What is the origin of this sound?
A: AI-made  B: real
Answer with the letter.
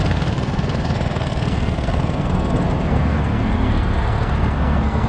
A